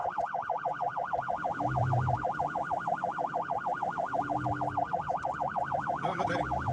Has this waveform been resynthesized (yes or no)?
no